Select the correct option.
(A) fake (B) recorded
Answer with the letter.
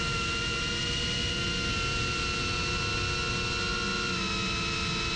B